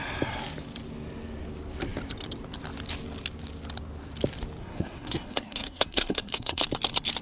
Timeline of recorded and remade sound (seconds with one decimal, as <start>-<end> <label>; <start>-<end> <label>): 0.0-4.6 recorded; 4.6-6.6 remade; 6.6-7.2 recorded